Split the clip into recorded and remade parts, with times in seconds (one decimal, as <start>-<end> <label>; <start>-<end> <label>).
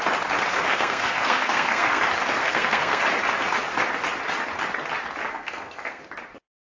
0.0-0.5 recorded; 0.5-2.0 remade; 2.0-2.4 recorded; 2.4-3.0 remade; 3.0-5.3 recorded; 5.3-6.0 remade; 6.0-6.7 recorded